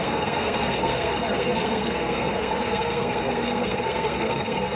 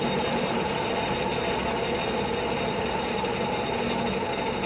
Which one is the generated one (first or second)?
first